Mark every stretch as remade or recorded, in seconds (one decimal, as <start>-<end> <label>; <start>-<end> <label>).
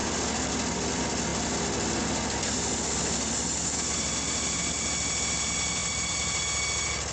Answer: 0.0-5.8 recorded; 5.8-6.4 remade; 6.4-7.1 recorded